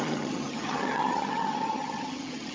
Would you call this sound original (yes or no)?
no